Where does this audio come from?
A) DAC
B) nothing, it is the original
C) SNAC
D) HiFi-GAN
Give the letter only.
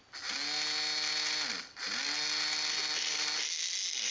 B